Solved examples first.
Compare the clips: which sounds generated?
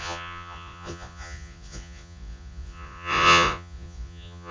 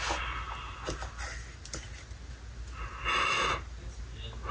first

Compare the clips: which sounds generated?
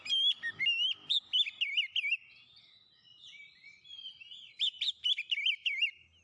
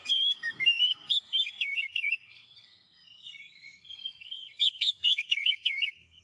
second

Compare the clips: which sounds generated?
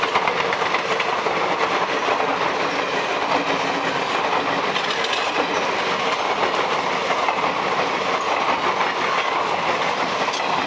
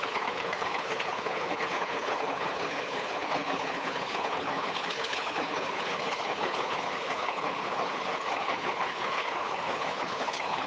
second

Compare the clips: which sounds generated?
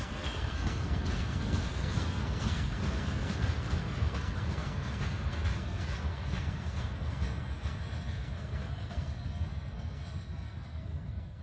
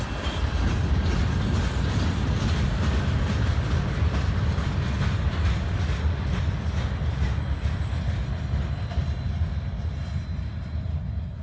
first